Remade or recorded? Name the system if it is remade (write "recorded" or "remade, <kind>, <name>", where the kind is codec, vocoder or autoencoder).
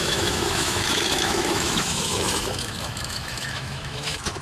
remade, autoencoder, DAC-VAE